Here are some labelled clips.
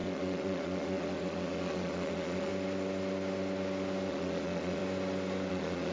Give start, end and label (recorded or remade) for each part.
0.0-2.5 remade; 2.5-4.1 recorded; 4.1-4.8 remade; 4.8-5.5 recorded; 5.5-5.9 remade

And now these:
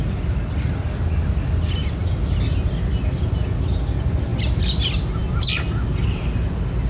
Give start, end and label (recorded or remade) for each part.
0.0-6.9 recorded

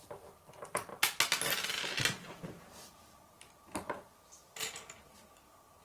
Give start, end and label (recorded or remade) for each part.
0.0-5.8 recorded

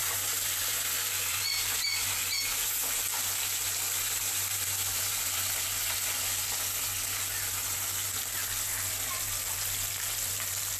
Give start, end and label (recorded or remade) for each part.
0.0-10.8 recorded

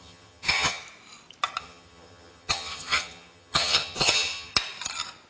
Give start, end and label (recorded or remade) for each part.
0.0-0.8 remade; 0.8-1.6 recorded; 1.6-4.5 remade; 4.5-5.3 recorded

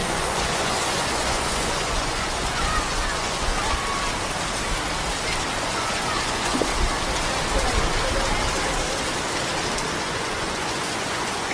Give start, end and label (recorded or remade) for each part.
0.0-3.5 remade; 3.5-5.6 recorded; 5.6-6.7 remade; 6.7-10.0 recorded; 10.0-11.5 remade

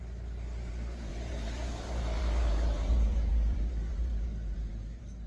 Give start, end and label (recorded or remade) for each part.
0.0-0.7 recorded; 0.7-5.3 remade